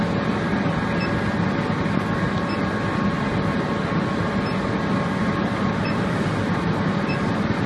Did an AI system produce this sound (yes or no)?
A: no